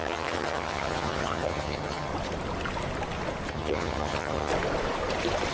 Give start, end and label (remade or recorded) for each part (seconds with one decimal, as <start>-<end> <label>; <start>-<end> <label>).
0.0-2.1 remade; 2.1-3.5 recorded; 3.5-4.5 remade; 4.5-5.5 recorded